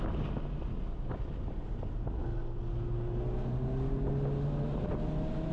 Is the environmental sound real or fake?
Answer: real